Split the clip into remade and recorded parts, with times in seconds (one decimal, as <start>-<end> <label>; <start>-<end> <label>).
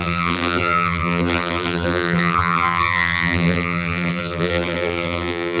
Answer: 0.0-5.6 remade